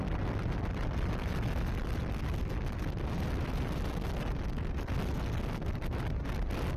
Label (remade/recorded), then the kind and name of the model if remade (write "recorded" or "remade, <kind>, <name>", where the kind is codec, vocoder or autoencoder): recorded